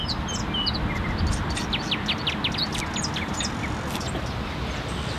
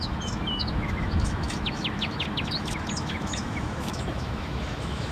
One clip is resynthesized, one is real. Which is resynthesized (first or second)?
second